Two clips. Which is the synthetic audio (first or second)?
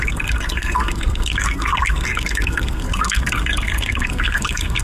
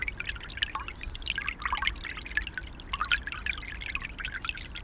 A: first